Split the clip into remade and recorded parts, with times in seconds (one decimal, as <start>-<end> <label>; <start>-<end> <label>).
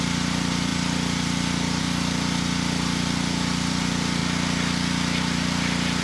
0.0-4.2 remade; 4.2-5.2 recorded; 5.2-6.0 remade